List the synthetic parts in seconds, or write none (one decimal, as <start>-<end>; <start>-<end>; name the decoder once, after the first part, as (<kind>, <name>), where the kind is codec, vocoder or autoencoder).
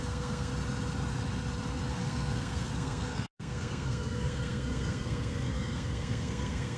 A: 0.0-0.5 (codec, SNAC); 1.9-6.8